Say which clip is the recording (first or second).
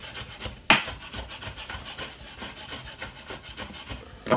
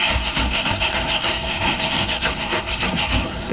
first